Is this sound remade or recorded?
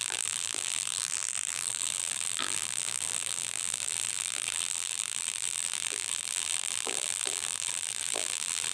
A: remade